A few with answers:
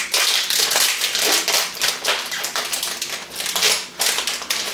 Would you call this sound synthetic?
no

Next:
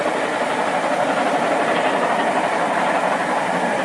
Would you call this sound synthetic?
no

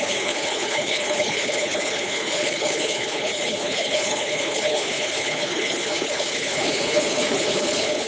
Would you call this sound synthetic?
yes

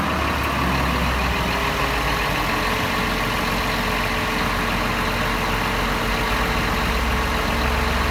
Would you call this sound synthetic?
no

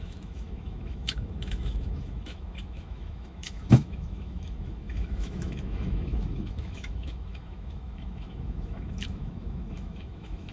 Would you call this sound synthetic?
yes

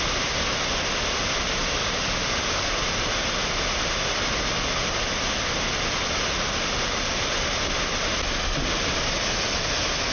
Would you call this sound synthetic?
no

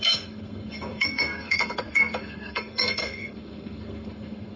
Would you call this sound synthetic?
yes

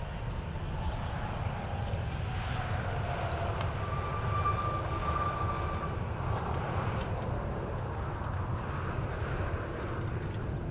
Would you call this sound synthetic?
no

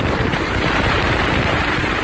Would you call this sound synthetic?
yes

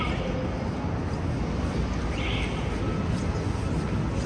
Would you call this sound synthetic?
no